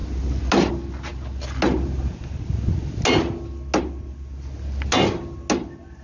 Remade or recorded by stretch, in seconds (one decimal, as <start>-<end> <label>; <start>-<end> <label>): 0.0-6.0 recorded

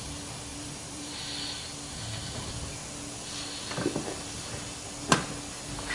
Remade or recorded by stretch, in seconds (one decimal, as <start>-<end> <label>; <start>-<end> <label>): 0.0-0.5 recorded; 0.5-1.2 remade; 1.2-5.9 recorded

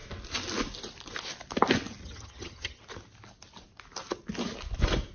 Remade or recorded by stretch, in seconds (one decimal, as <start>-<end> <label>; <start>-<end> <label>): 0.0-2.0 recorded; 2.0-2.8 remade; 2.8-5.1 recorded

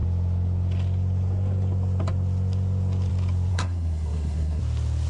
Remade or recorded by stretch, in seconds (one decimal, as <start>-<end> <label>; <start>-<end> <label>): 0.0-3.5 recorded; 3.5-4.6 remade; 4.6-5.1 recorded

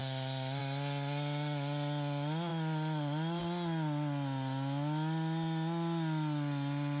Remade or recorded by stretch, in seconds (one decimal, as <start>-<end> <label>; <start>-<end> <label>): 0.0-0.6 remade; 0.6-2.5 recorded; 2.5-3.4 remade; 3.4-7.0 recorded